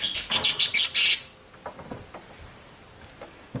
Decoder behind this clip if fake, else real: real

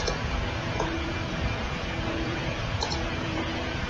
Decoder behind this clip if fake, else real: fake, vocoder, Vocos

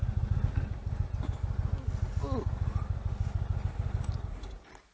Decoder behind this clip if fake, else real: real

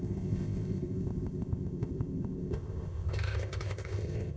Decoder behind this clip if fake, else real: fake, codec, ZipCodec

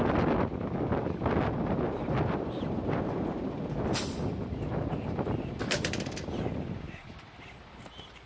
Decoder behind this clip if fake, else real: real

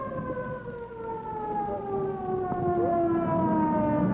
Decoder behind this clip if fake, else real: real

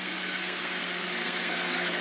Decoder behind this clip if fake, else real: fake, codec, SNAC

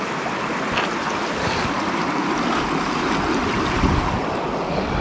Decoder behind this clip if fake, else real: real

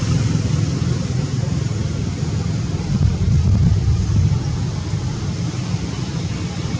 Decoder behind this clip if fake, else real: real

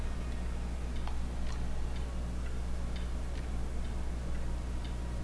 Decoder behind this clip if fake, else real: real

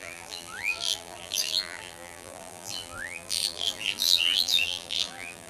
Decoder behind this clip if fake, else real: fake, vocoder, BigVGAN v2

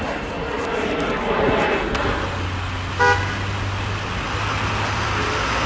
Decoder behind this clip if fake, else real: real